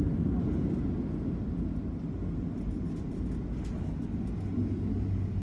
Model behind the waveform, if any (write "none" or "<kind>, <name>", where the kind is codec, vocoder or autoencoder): none